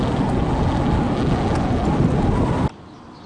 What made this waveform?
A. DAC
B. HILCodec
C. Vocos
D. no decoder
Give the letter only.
D